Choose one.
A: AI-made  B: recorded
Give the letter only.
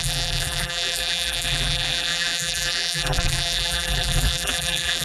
A